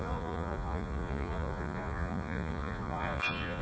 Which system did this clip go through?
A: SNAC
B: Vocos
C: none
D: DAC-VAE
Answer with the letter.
B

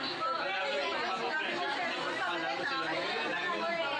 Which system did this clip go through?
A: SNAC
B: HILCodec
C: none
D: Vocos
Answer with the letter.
C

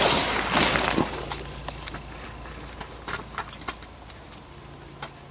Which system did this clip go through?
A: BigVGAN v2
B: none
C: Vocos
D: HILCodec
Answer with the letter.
B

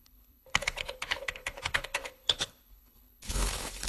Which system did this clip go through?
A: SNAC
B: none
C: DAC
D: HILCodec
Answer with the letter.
D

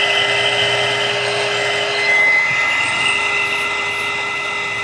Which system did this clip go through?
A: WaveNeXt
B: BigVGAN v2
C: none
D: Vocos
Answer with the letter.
C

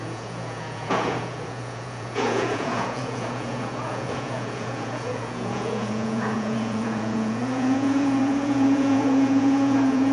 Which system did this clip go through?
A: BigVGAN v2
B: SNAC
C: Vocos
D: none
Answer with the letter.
C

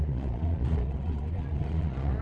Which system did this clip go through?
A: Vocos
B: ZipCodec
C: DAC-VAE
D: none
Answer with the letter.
A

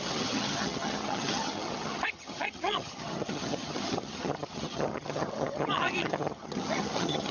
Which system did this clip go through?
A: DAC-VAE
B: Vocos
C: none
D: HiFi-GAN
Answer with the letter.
D